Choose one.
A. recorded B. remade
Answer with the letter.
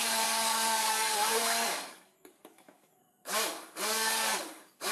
B